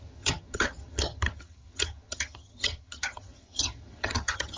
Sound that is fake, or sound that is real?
fake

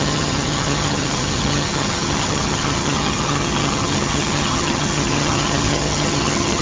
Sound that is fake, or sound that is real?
fake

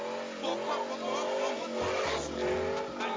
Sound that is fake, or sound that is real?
real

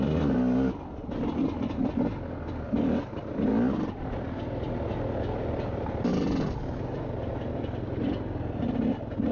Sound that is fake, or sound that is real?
real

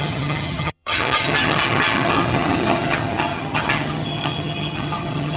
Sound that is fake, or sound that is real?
fake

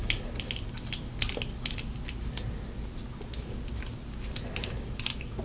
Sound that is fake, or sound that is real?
real